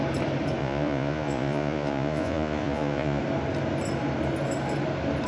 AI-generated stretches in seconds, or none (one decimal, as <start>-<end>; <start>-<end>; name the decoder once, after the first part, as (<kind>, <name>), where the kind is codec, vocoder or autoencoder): 0.6-3.2 (vocoder, Vocos)